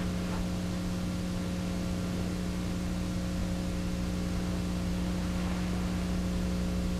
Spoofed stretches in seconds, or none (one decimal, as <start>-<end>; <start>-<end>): none